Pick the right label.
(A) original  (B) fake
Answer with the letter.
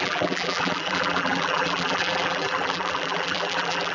B